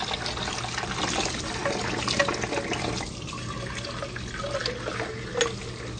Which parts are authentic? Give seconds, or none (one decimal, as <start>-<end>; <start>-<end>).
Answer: 0.0-6.0